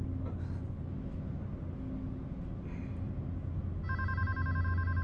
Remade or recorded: recorded